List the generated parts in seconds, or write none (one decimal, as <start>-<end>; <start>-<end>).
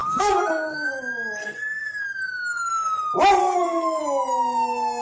0.0-0.9; 1.4-2.0; 3.4-4.0